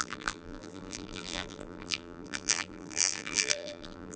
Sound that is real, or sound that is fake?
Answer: fake